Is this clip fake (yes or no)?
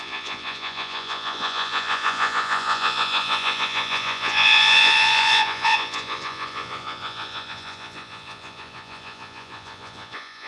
yes